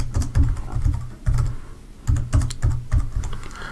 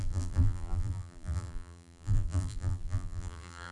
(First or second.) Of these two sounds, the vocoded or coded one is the second